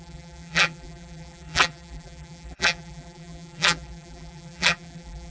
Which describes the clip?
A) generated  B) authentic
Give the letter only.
A